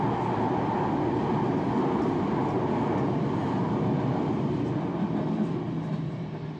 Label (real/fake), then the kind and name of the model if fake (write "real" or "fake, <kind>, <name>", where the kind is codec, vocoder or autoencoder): real